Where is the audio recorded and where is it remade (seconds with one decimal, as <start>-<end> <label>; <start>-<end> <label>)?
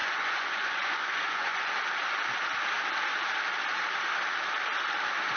0.0-1.7 remade; 1.7-5.4 recorded